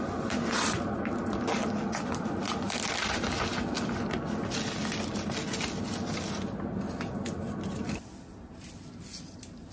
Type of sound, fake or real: real